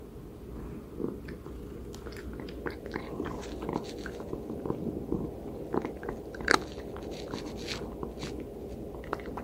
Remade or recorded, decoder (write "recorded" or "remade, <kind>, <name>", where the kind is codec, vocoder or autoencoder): recorded